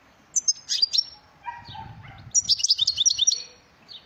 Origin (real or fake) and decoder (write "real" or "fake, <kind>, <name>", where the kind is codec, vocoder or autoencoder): real